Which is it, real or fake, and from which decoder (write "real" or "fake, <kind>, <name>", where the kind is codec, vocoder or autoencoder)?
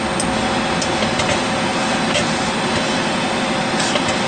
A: real